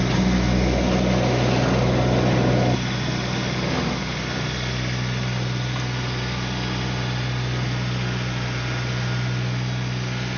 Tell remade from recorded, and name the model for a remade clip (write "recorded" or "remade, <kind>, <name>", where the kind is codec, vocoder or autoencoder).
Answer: recorded